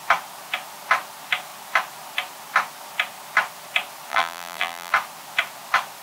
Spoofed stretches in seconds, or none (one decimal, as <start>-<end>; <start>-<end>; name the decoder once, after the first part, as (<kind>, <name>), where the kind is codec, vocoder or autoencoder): 4.1-4.9 (vocoder, BigVGAN v2)